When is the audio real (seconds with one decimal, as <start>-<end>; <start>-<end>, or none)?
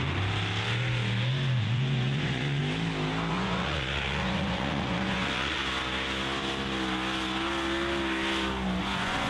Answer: 0.0-1.6; 2.6-3.3; 5.6-8.8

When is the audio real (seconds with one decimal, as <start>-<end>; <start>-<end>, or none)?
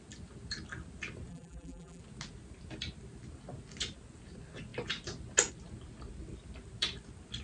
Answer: 0.0-1.3; 2.0-7.4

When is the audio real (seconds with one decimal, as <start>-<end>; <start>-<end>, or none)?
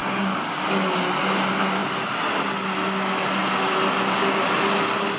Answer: 1.0-5.2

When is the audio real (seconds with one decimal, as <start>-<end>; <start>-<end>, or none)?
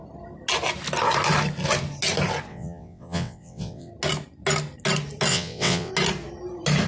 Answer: 0.0-2.5; 3.9-5.3; 5.9-6.9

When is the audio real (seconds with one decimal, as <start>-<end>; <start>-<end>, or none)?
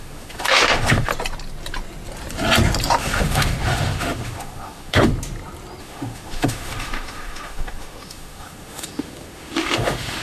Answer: 1.1-3.0; 5.1-5.8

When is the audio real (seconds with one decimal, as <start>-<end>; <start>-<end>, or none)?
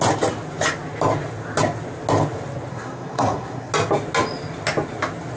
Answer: 0.0-2.7; 3.7-5.4